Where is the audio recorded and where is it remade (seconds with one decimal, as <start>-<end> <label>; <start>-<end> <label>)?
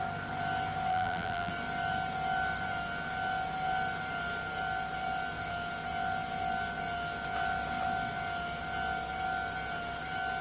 0.0-0.9 recorded; 0.9-1.5 remade; 1.5-10.4 recorded